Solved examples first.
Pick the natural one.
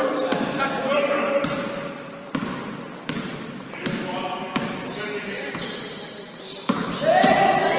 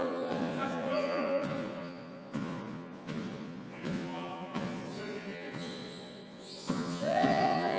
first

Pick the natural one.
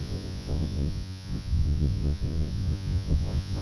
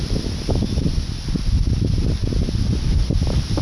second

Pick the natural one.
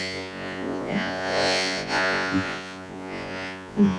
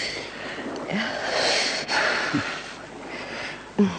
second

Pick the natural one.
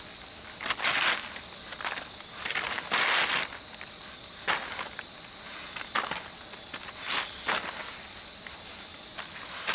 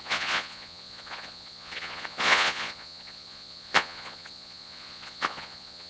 first